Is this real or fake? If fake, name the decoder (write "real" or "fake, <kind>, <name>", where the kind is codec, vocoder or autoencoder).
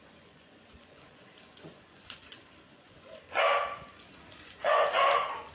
fake, vocoder, Vocos